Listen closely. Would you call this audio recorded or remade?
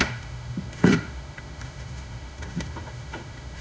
remade